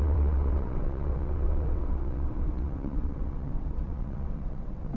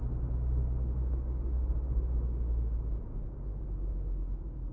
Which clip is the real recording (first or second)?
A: second